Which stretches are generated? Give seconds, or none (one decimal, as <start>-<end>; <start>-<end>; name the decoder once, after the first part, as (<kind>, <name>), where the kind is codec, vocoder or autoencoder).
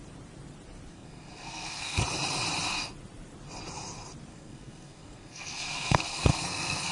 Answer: 0.9-2.0 (codec, SNAC); 4.3-6.9